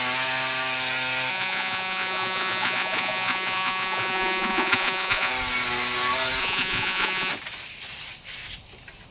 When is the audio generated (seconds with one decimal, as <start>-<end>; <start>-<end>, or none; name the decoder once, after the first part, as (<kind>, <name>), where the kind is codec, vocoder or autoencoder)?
1.3-5.3 (vocoder, Vocos); 6.4-7.3